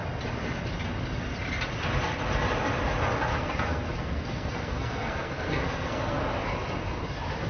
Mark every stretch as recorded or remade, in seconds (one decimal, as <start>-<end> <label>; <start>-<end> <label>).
0.0-3.3 recorded; 3.3-6.2 remade; 6.2-7.5 recorded